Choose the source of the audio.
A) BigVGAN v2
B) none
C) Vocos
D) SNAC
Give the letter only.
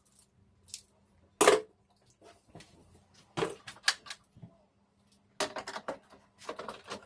B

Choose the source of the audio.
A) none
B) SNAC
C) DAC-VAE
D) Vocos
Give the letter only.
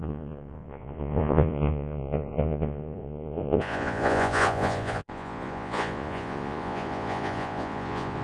D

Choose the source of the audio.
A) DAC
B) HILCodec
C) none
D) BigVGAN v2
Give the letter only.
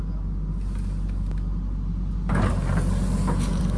C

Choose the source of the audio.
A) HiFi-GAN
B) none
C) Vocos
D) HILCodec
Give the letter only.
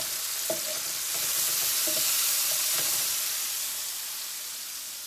B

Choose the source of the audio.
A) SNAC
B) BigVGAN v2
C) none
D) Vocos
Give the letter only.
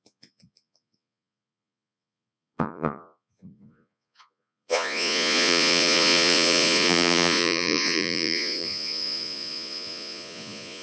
D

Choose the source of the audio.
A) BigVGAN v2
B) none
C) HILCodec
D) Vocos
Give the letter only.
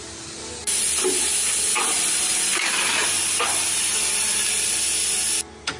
B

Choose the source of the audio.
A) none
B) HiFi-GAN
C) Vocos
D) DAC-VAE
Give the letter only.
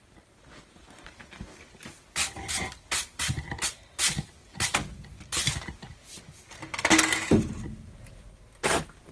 A